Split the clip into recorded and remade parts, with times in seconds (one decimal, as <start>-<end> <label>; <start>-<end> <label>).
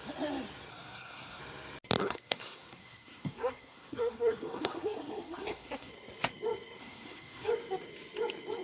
0.0-0.7 recorded; 0.7-1.4 remade; 1.4-2.0 recorded; 2.0-5.9 remade; 5.9-6.8 recorded; 6.8-7.5 remade; 7.5-8.6 recorded